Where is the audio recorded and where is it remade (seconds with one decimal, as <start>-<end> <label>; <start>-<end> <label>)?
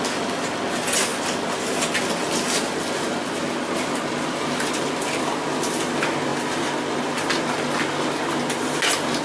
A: 0.0-9.2 recorded